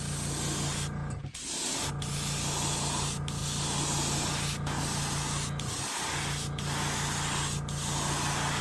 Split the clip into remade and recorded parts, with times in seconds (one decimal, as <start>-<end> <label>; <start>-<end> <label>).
0.0-8.6 recorded